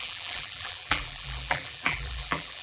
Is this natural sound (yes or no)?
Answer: no